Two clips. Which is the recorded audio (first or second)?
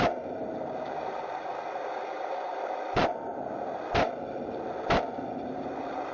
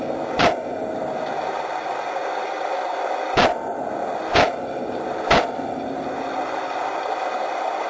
second